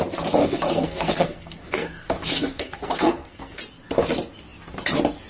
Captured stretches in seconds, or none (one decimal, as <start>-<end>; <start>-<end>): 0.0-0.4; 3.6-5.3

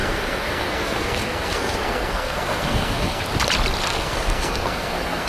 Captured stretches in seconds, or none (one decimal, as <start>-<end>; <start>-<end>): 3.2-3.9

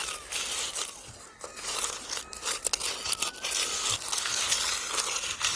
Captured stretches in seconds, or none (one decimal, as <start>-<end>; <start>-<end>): 0.0-5.6

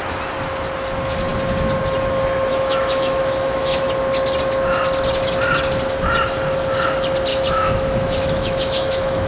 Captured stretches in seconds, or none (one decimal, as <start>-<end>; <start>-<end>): 0.0-2.5; 3.8-7.3

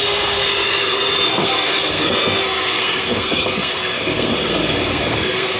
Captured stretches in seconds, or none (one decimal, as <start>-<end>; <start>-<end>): none